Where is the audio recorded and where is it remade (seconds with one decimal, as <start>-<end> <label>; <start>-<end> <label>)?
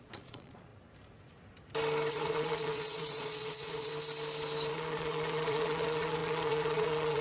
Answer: 0.0-0.7 remade; 0.7-2.1 recorded; 2.1-3.9 remade; 3.9-4.7 recorded; 4.7-7.2 remade